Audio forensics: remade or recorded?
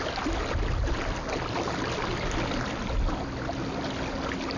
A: recorded